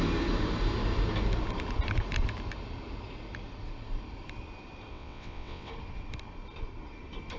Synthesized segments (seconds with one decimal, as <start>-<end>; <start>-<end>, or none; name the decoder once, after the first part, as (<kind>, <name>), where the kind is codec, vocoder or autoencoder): 4.9-5.7 (vocoder, WaveNeXt)